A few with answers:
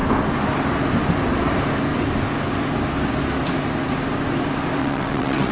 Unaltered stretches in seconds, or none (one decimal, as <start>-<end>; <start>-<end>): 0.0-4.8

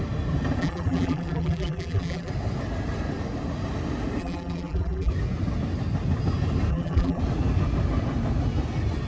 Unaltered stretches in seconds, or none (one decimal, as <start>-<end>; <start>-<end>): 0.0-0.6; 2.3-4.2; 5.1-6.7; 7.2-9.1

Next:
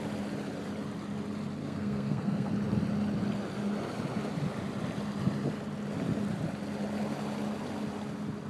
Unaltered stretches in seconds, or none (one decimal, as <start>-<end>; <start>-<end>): 0.0-1.6; 2.5-8.5

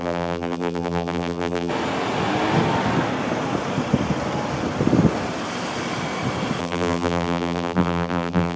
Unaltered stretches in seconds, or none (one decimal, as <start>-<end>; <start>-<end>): 1.7-6.6

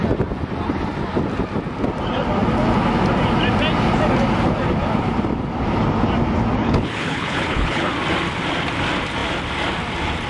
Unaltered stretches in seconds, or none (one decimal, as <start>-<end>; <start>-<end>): 0.0-6.6; 7.9-10.3

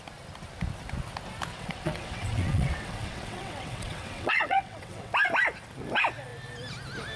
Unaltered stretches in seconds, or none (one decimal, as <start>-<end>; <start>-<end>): 0.0-1.5; 5.1-7.2

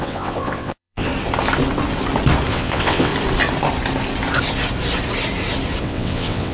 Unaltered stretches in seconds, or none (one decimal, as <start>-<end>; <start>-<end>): 1.1-2.5; 3.1-5.8